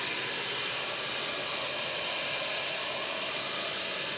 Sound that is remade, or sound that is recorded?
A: recorded